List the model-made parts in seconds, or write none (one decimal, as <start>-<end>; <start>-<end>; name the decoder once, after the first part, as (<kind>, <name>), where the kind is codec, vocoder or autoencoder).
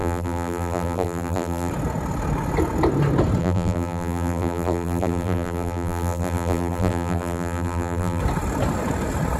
0.0-1.7 (vocoder, BigVGAN v2); 3.4-8.2